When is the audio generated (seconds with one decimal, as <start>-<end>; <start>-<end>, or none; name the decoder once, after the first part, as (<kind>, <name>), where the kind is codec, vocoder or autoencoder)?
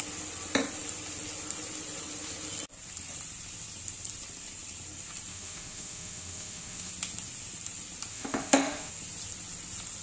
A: 5.3-6.9 (autoencoder, DAC-VAE); 8.1-8.9